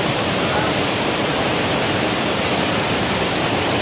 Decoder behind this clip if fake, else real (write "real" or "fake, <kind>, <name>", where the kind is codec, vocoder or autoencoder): real